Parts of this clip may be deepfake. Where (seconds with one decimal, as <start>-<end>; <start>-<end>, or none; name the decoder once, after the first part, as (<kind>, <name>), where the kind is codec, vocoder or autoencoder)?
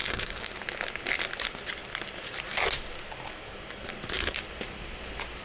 0.0-0.5 (codec, DAC)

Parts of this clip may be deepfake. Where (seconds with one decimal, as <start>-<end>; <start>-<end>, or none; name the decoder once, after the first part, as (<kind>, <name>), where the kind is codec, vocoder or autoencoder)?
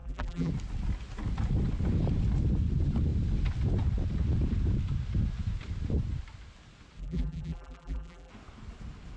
0.0-0.5 (vocoder, BigVGAN v2); 7.0-8.3